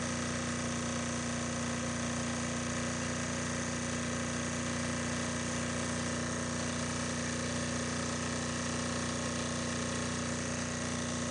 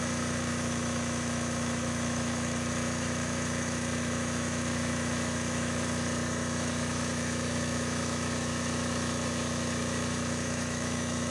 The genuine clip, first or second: first